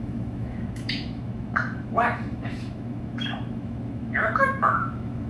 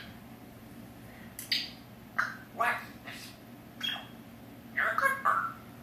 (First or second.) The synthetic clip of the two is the first